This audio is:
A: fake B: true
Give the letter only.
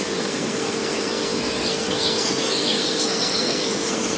A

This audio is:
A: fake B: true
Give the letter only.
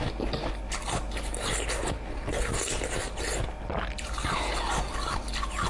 B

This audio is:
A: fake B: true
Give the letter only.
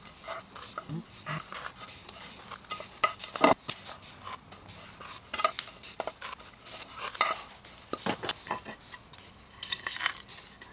B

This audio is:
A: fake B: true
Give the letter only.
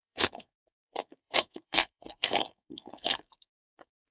A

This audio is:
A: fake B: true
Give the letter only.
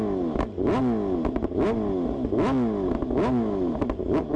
B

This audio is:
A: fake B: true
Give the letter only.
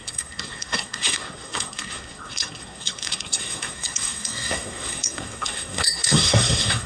A